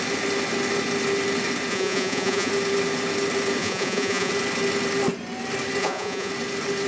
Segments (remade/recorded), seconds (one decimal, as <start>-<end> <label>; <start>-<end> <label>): 0.0-1.7 recorded; 1.7-2.5 remade; 2.5-3.6 recorded; 3.6-4.3 remade; 4.3-5.8 recorded; 5.8-6.3 remade; 6.3-6.9 recorded

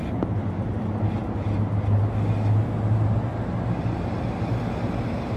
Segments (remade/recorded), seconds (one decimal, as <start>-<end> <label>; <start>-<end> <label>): 0.0-5.4 recorded